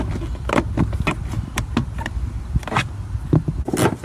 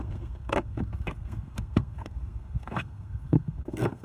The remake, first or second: second